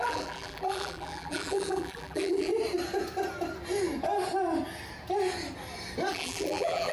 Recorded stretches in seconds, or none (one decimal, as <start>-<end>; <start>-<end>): 2.5-6.1